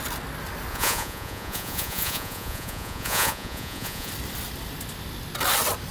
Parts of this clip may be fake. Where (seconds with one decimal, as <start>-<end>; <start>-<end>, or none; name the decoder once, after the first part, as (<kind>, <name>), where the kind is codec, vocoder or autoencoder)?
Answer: 0.7-4.1 (vocoder, Vocos)